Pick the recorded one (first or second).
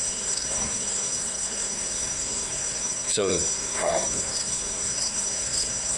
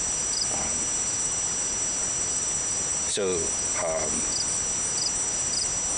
second